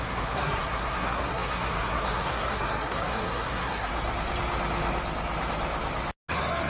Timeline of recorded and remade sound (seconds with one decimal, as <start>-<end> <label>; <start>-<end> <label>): 0.0-3.9 remade; 3.9-6.3 recorded; 6.3-6.7 remade